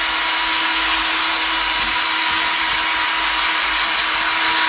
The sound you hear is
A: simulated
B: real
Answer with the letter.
B